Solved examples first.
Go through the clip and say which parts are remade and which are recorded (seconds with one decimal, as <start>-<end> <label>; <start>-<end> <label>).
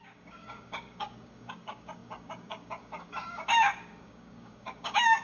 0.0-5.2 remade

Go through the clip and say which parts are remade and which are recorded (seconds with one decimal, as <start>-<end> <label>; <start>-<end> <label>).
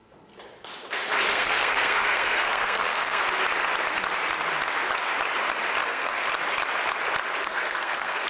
0.0-1.3 recorded; 1.3-3.2 remade; 3.2-5.8 recorded; 5.8-6.3 remade; 6.3-7.4 recorded; 7.4-8.3 remade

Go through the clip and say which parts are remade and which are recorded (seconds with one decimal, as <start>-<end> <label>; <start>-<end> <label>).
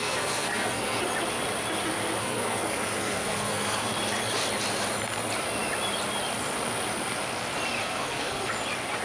0.0-1.0 remade; 1.0-2.2 recorded; 2.2-3.9 remade; 3.9-7.8 recorded; 7.8-8.5 remade; 8.5-9.0 recorded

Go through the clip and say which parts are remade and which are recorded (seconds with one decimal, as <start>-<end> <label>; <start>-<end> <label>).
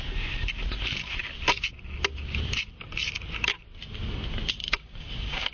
0.0-4.6 recorded; 4.6-5.5 remade